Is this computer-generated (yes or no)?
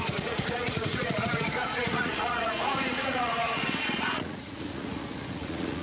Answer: yes